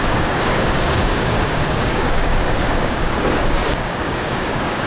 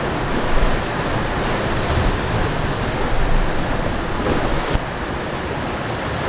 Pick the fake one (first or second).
first